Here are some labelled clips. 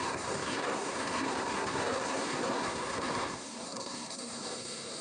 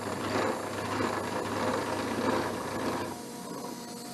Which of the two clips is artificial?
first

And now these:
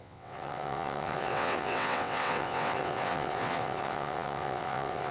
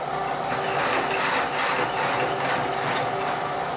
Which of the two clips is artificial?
first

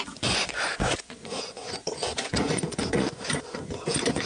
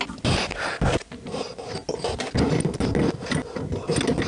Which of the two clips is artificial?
first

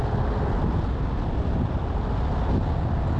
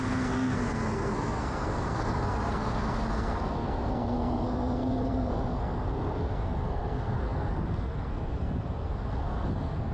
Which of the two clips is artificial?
second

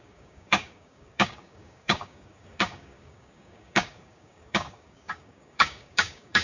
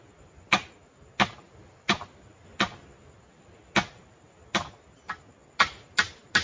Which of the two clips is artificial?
first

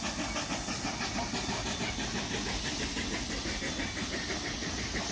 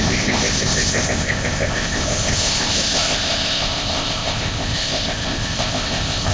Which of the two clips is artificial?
second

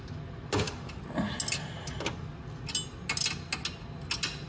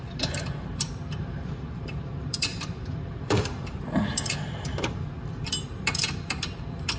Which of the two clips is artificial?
second